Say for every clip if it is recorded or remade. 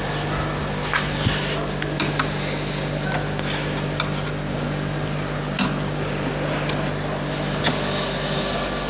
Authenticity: recorded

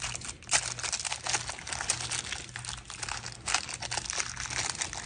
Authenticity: recorded